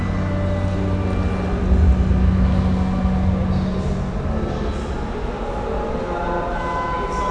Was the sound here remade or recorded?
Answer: recorded